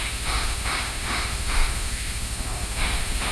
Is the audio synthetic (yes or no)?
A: yes